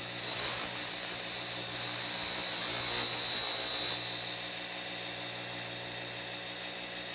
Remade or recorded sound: recorded